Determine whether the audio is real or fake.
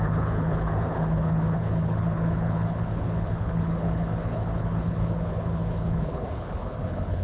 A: fake